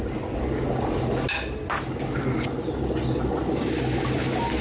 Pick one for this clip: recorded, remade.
recorded